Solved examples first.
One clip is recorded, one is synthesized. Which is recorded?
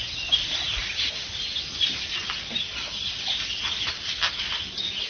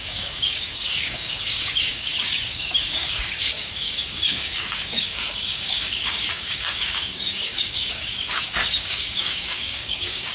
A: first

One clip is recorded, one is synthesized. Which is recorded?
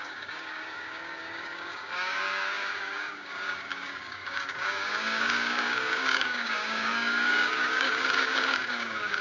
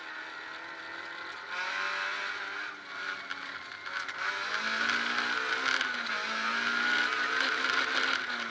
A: second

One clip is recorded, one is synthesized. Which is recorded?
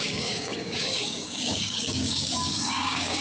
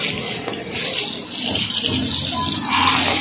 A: second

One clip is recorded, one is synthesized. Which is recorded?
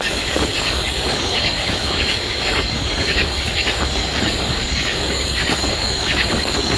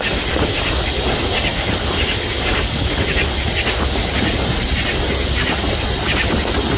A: second